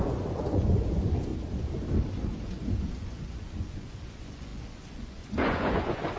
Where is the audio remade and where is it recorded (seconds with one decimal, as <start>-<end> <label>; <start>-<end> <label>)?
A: 0.0-1.3 remade; 1.3-2.2 recorded; 2.2-6.2 remade